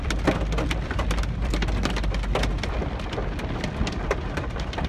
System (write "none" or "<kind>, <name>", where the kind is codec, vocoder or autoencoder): vocoder, BigVGAN v2